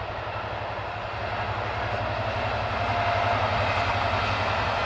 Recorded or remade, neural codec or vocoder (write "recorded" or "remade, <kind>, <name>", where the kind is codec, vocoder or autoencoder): recorded